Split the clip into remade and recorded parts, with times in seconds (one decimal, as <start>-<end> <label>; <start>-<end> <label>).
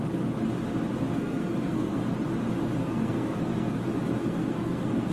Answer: 0.0-1.2 recorded; 1.2-2.0 remade; 2.0-2.8 recorded; 2.8-3.8 remade; 3.8-4.2 recorded; 4.2-5.1 remade